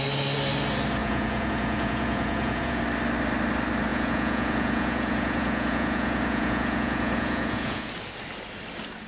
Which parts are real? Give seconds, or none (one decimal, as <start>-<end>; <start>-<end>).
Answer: 0.0-1.0; 2.8-3.9; 7.9-9.1

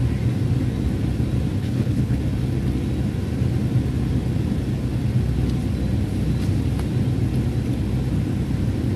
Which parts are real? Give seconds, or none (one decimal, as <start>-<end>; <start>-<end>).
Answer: 0.0-1.6; 2.2-9.0